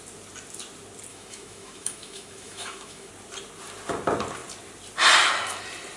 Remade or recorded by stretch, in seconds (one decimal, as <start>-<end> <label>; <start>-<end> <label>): 0.0-1.1 recorded; 1.1-3.1 remade; 3.1-6.0 recorded